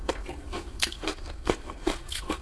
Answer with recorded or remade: remade